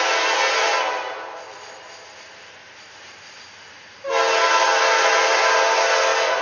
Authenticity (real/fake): real